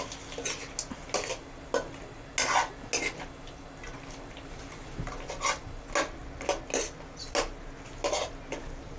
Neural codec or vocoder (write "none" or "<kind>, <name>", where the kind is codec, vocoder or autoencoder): none